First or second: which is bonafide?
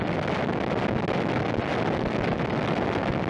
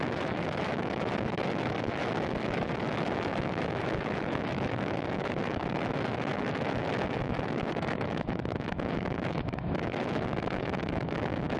first